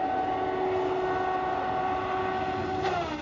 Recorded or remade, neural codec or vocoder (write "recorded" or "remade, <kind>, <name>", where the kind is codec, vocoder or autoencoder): recorded